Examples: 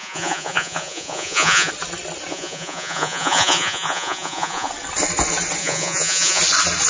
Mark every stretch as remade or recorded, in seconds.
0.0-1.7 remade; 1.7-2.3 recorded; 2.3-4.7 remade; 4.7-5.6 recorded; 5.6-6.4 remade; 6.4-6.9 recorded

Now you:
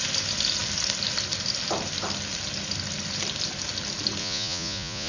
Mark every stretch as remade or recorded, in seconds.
0.0-4.2 recorded; 4.2-5.1 remade